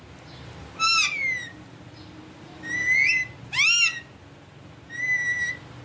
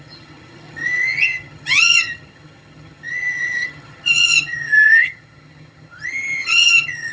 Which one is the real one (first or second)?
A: first